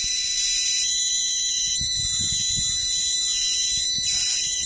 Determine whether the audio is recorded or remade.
recorded